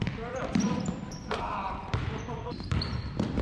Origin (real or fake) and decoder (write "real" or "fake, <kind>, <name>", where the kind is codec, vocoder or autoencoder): fake, vocoder, BigVGAN v2